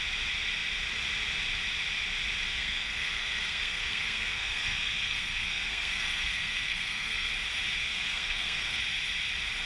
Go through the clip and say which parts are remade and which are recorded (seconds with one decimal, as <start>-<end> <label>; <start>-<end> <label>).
0.0-2.5 recorded; 2.5-7.3 remade; 7.3-7.8 recorded; 7.8-8.8 remade; 8.8-9.7 recorded